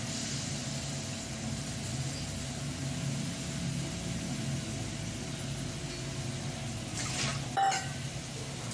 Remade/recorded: recorded